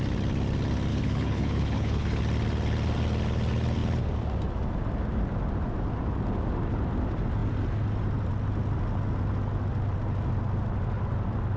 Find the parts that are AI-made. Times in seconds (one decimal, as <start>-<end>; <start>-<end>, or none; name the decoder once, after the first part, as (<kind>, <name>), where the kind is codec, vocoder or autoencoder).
0.9-2.2 (codec, HILCodec)